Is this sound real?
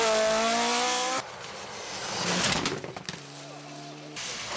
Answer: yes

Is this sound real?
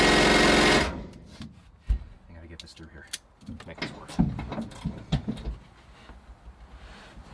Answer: yes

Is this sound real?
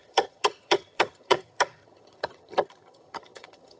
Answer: no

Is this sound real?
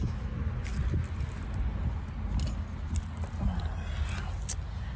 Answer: yes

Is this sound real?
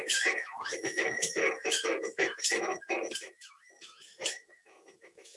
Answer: no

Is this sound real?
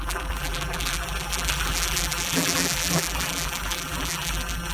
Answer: no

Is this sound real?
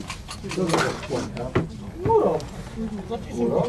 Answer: yes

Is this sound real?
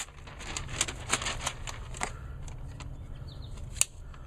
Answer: yes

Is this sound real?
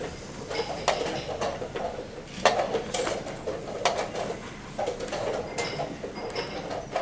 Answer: yes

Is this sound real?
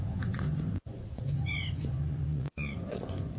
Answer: no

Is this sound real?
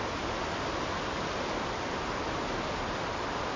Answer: yes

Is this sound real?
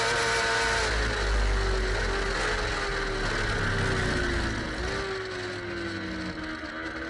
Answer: yes